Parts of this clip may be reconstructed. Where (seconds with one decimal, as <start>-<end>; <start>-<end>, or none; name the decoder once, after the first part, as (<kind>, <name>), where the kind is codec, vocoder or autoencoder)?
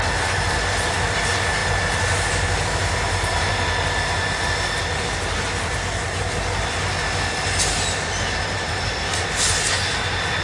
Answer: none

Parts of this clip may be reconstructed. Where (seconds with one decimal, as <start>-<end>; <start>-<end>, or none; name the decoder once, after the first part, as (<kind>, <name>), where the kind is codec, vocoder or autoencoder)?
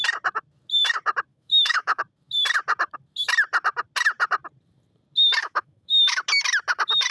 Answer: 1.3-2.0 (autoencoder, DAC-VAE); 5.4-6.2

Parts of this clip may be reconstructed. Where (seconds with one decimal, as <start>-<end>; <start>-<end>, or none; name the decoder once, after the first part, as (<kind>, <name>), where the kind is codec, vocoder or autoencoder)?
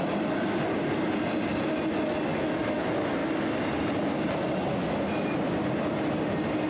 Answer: 2.3-2.8 (autoencoder, DAC-VAE)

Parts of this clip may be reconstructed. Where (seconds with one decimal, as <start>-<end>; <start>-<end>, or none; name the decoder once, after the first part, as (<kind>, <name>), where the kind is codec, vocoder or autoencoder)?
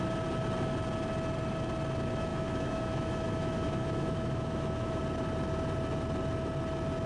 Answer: 2.3-5.0 (autoencoder, DAC-VAE)